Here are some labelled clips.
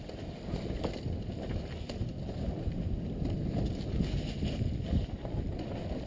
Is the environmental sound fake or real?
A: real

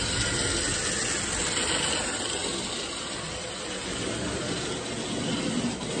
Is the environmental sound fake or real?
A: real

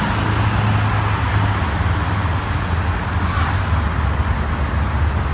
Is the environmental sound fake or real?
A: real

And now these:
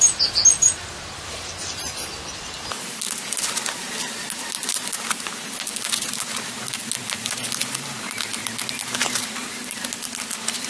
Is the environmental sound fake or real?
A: real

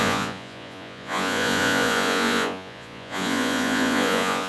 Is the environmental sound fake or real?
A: fake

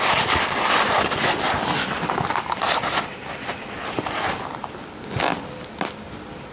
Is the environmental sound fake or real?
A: real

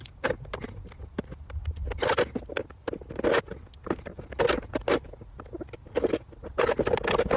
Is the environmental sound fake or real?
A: real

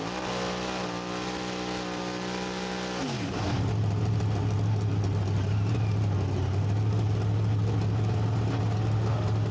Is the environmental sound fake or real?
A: real